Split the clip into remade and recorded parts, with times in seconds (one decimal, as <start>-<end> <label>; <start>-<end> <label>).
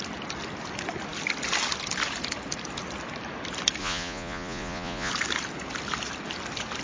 0.0-3.8 recorded; 3.8-5.1 remade; 5.1-6.8 recorded